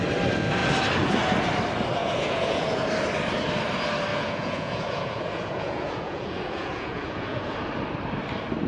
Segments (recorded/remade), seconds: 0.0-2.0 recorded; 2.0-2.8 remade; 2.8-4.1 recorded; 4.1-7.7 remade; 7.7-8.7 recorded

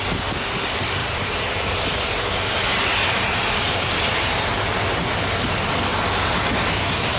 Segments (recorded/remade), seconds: 0.0-1.0 recorded; 1.0-1.9 remade; 1.9-3.0 recorded; 3.0-5.4 remade; 5.4-7.2 recorded

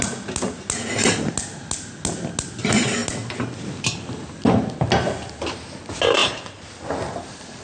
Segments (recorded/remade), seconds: 0.0-7.6 recorded

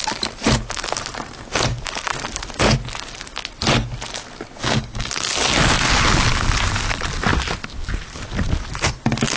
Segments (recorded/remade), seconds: 0.0-4.6 recorded; 4.6-5.1 remade; 5.1-9.4 recorded

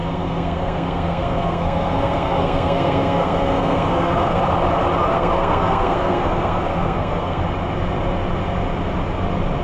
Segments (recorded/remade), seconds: 0.0-4.4 remade; 4.4-5.1 recorded; 5.1-7.4 remade; 7.4-9.6 recorded

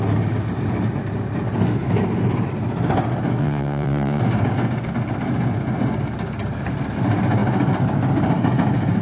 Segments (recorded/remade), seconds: 0.0-3.4 recorded; 3.4-4.2 remade; 4.2-9.0 recorded